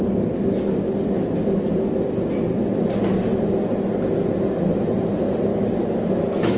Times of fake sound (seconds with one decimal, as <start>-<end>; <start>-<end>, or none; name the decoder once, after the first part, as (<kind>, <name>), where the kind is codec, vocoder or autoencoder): 5.5-6.6 (autoencoder, DAC-VAE)